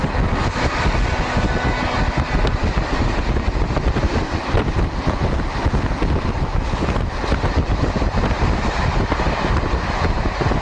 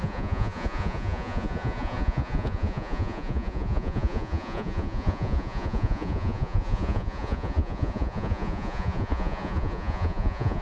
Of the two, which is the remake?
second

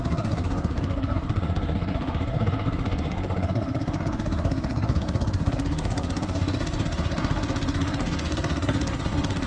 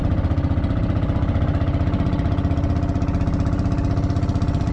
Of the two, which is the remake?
first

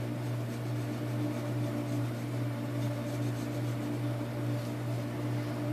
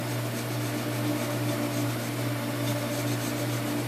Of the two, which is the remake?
second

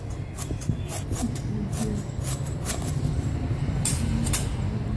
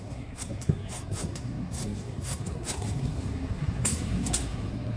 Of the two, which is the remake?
second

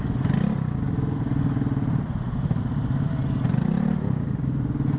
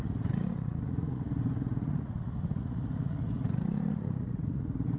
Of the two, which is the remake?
second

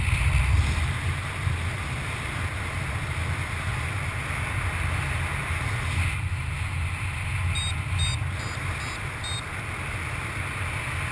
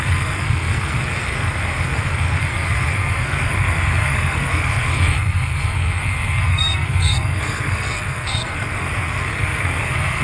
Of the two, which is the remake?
second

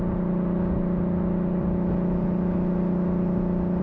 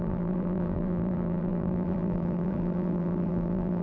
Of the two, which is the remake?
second